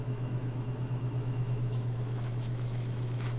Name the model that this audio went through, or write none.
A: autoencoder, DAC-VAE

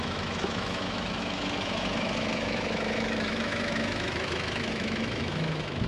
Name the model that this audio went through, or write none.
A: autoencoder, DAC-VAE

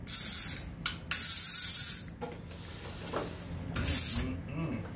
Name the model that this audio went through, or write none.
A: none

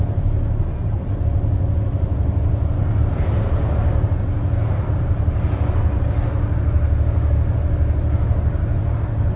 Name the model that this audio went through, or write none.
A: none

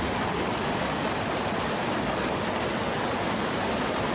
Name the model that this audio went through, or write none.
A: none